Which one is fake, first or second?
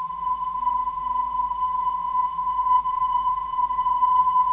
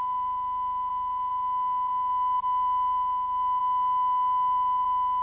first